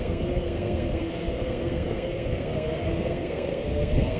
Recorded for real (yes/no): no